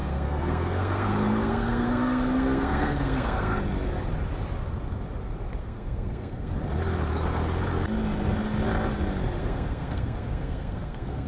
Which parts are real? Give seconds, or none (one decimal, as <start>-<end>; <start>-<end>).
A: 3.6-5.6; 6.5-9.4